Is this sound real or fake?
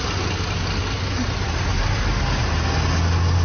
real